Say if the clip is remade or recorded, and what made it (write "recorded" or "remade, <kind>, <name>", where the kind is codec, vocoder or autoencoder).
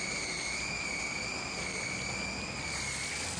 recorded